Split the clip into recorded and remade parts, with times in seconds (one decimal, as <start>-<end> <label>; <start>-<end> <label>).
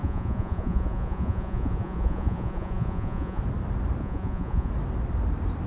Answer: 0.0-3.4 remade; 3.4-4.0 recorded; 4.0-4.7 remade; 4.7-5.7 recorded